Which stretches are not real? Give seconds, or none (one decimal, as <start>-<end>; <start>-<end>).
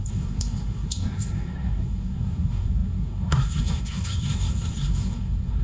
0.0-5.6